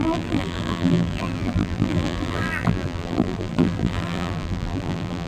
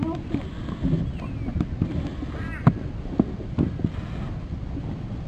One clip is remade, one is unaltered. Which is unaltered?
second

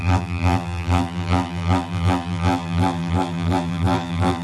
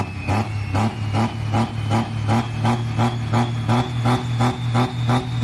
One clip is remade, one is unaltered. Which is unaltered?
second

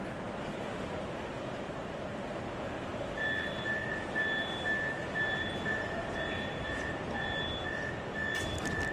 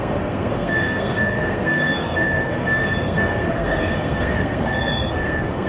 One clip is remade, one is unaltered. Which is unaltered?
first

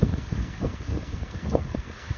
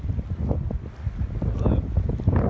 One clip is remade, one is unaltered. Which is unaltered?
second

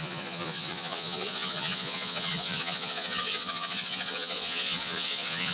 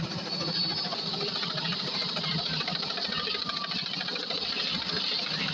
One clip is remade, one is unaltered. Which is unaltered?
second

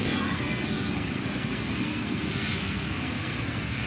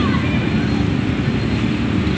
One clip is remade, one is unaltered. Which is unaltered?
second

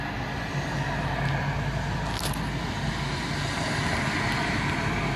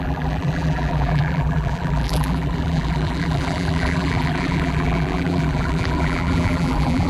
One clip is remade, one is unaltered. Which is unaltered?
first